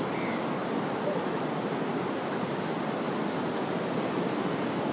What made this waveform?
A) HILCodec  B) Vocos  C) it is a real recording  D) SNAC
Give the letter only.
C